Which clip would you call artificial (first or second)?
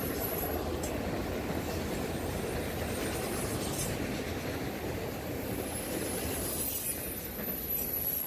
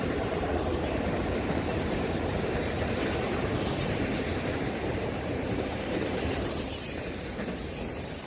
second